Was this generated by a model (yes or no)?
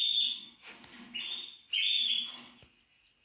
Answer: no